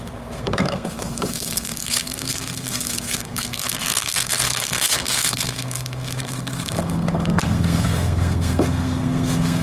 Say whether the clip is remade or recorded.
remade